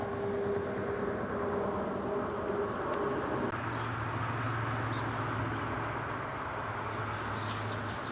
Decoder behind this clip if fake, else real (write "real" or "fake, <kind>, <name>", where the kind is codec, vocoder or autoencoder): real